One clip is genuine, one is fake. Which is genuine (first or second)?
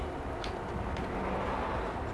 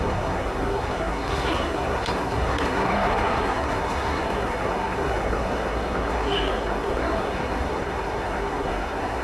first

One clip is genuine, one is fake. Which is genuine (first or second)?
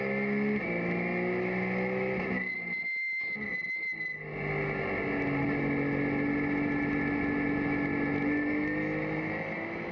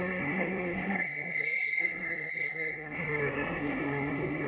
first